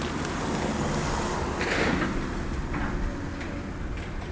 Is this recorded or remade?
recorded